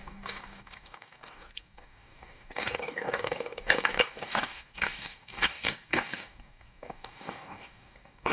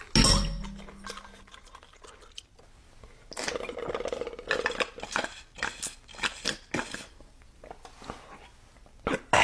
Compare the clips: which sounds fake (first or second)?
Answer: first